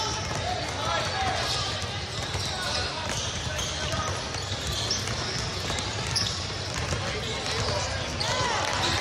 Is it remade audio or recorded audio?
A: recorded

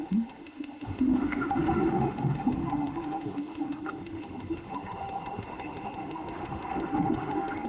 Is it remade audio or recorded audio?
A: remade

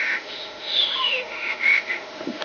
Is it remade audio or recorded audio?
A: remade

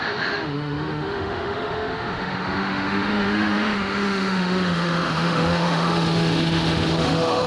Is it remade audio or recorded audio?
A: remade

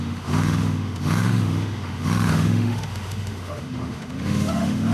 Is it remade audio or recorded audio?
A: remade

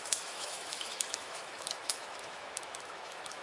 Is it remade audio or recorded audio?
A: remade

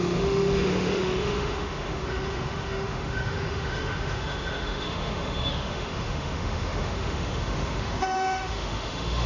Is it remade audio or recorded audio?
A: remade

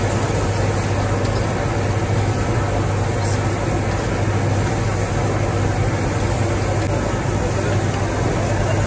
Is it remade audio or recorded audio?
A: recorded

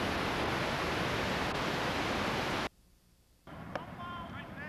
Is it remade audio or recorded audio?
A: recorded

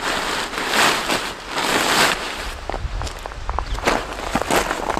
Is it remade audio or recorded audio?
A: recorded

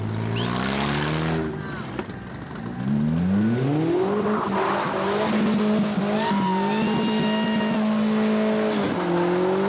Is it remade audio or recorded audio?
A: recorded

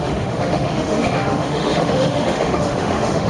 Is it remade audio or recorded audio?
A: remade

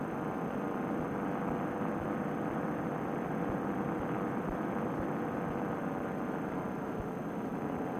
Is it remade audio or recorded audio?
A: recorded